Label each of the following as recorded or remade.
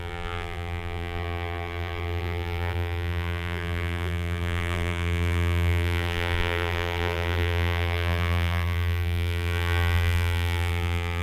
remade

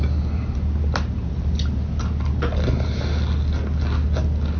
recorded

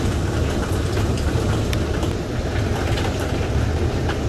remade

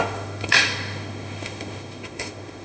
remade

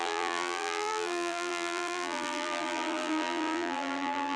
remade